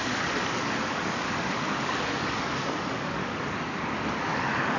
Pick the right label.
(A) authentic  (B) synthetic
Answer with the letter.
B